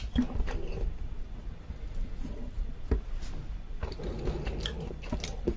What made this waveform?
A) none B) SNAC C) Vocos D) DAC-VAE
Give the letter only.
A